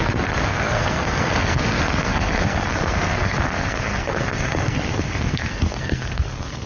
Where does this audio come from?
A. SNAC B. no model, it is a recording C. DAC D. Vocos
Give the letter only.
A